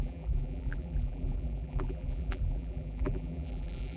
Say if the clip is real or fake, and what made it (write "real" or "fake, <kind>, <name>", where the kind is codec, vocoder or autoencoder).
fake, vocoder, BigVGAN v2